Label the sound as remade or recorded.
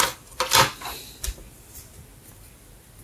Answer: recorded